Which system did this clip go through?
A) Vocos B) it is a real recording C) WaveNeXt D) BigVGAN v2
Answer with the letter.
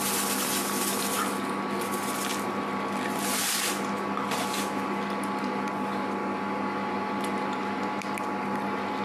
B